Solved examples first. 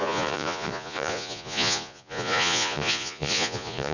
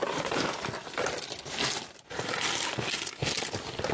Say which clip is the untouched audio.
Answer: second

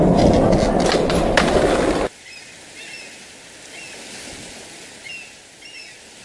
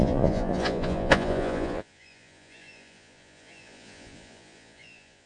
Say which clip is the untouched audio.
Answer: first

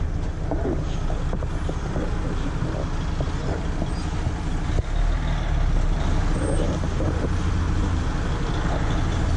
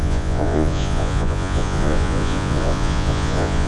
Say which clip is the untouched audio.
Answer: first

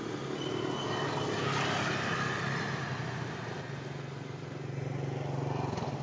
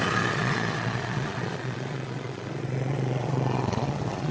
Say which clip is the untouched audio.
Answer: first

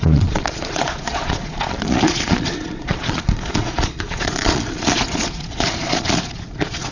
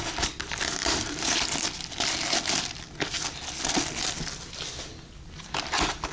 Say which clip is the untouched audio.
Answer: second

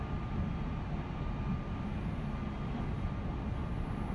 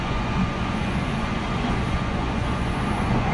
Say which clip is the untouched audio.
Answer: first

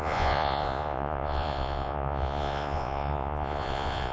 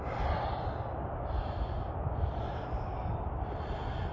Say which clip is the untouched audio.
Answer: second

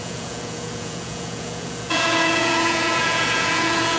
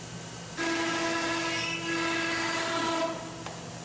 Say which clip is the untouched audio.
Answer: second